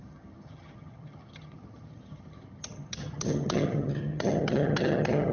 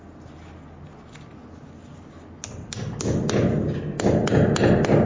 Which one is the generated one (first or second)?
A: first